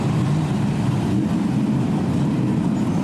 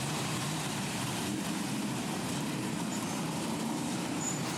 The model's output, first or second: second